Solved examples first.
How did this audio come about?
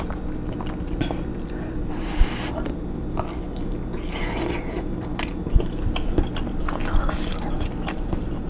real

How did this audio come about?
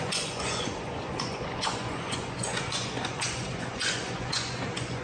fake